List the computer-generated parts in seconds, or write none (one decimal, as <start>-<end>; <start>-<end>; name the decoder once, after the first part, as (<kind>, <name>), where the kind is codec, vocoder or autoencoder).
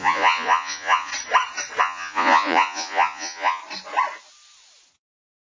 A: 0.0-1.1 (vocoder, Vocos); 1.8-3.6; 5.0-5.5